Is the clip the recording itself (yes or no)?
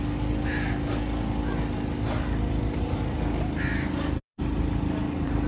yes